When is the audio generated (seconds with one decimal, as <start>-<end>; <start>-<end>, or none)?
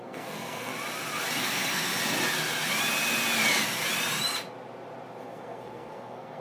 0.0-0.7; 1.4-1.9; 5.2-6.4